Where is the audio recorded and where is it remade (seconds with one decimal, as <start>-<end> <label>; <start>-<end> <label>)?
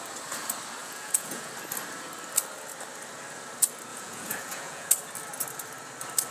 0.0-0.8 recorded; 0.8-1.5 remade; 1.5-3.9 recorded; 3.9-4.9 remade; 4.9-6.3 recorded